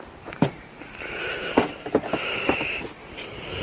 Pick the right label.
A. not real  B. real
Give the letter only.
A